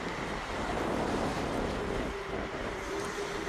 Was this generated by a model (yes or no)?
no